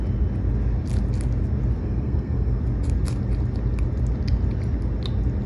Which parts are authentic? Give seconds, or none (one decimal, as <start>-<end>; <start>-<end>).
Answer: 0.0-1.8; 2.6-5.5